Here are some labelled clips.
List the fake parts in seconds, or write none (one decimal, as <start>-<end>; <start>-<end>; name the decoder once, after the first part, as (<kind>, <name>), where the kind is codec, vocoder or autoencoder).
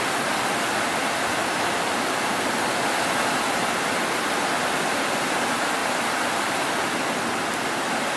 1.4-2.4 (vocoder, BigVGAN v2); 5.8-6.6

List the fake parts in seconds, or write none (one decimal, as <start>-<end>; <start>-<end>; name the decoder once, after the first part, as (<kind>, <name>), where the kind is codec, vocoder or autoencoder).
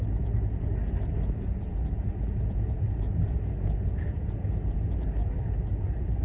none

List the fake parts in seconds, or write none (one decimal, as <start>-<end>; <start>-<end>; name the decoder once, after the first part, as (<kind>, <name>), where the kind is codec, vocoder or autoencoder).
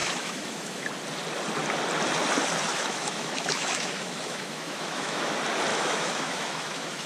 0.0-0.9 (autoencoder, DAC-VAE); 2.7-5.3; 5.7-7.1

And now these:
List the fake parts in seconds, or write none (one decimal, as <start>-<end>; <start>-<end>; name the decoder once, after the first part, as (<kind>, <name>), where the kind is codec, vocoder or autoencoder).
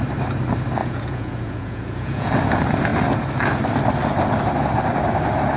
0.8-2.3 (vocoder, Vocos)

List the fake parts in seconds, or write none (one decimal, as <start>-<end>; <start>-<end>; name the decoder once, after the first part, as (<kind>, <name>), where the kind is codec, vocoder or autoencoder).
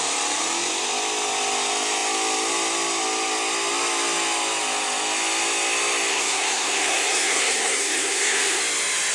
6.1-8.6 (codec, SNAC)